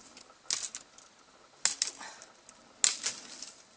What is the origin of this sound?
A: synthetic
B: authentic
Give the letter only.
B